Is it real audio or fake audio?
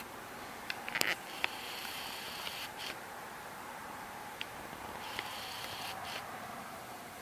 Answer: fake